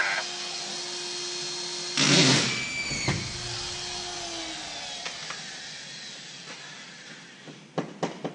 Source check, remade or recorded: recorded